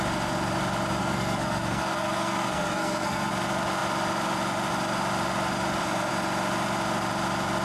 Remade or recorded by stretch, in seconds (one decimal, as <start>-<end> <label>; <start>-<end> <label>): 0.0-1.0 recorded; 1.0-3.3 remade; 3.3-7.6 recorded